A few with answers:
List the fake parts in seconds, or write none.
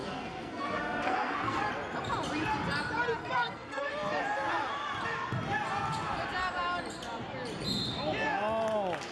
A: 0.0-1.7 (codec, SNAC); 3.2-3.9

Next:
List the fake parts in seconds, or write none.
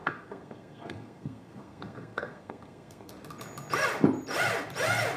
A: 0.0-3.1 (codec, SNAC)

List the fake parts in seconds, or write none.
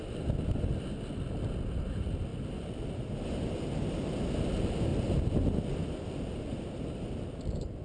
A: none